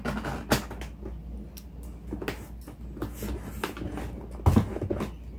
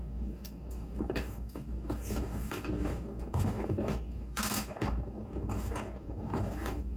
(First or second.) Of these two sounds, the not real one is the second